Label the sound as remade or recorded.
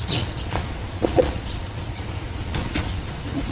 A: remade